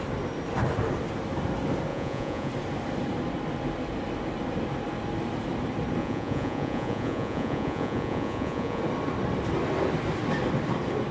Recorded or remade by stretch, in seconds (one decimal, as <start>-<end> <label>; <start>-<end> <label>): 0.0-1.9 recorded; 1.9-2.5 remade; 2.5-6.0 recorded; 6.0-8.8 remade; 8.8-11.1 recorded